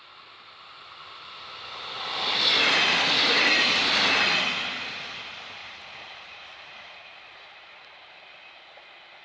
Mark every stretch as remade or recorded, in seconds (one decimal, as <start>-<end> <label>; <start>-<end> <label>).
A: 0.0-5.6 recorded; 5.6-8.1 remade; 8.1-9.2 recorded